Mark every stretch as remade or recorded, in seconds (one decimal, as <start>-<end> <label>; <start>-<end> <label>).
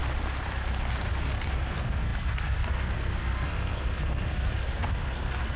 0.0-1.1 recorded; 1.1-5.6 remade